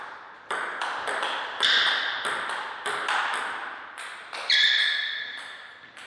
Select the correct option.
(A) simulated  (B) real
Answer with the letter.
B